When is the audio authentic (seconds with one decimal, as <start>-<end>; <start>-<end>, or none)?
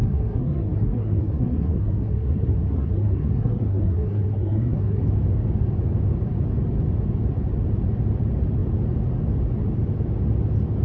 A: 5.0-10.8